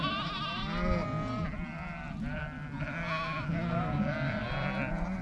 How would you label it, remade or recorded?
recorded